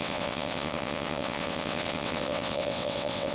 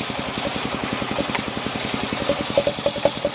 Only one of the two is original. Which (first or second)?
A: second